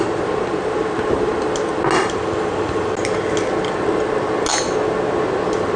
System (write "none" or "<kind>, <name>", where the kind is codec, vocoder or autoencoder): none